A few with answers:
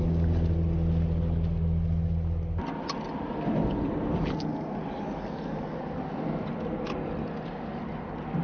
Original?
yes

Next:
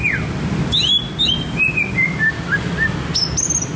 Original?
yes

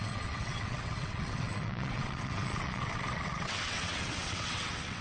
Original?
no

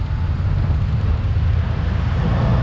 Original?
yes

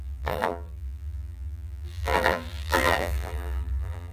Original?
no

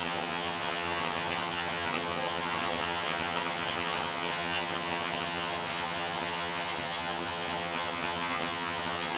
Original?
no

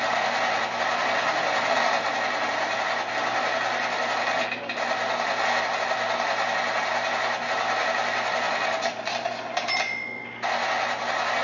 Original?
yes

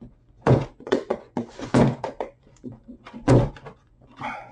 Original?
no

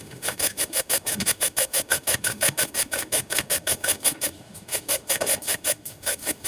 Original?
no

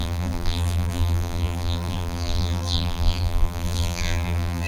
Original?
no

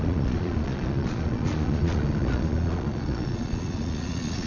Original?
no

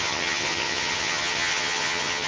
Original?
no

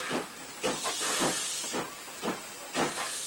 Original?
yes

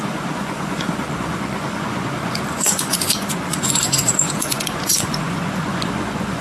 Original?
no